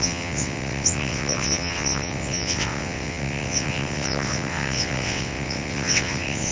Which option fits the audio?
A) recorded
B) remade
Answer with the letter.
B